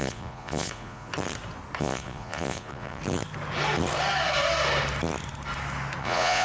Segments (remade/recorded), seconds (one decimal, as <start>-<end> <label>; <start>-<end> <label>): 0.0-1.1 remade; 1.1-1.8 recorded; 1.8-3.0 remade; 3.0-6.0 recorded; 6.0-6.4 remade